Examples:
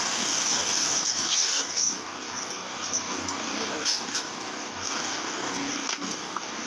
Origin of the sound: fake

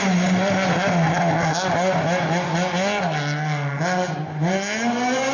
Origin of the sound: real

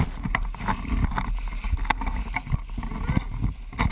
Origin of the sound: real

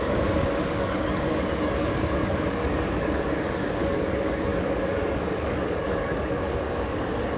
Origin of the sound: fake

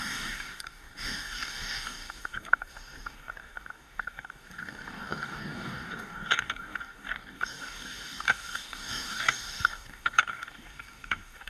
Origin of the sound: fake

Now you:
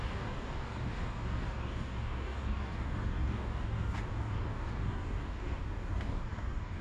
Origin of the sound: fake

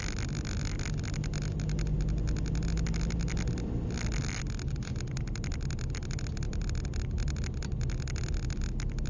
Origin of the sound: real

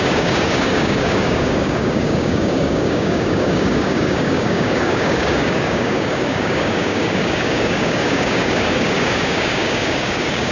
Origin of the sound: fake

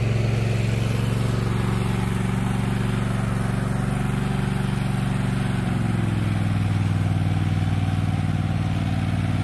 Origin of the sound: real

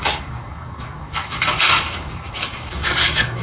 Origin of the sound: fake